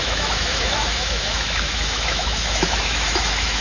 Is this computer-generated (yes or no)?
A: yes